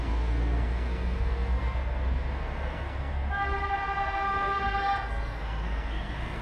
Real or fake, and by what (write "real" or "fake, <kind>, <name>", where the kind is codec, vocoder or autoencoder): fake, codec, SNAC